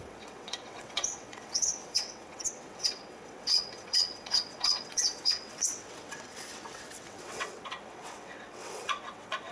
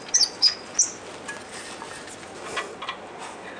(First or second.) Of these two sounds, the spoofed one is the first